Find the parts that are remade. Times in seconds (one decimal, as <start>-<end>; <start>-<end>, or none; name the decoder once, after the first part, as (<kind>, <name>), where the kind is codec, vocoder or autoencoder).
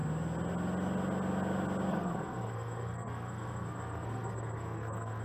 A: 1.9-5.2 (codec, SNAC)